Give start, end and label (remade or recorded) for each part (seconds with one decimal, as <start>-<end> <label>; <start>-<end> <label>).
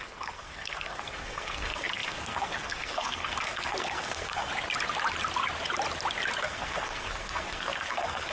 0.0-4.5 remade; 4.5-6.4 recorded; 6.4-8.3 remade